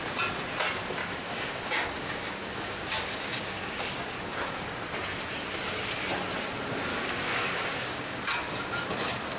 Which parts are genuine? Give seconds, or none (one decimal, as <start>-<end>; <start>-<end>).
0.0-1.0; 4.8-6.9; 8.2-9.4